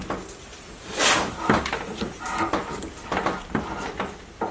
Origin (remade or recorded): recorded